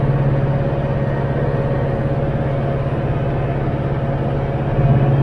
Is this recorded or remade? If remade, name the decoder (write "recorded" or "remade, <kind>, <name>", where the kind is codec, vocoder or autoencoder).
recorded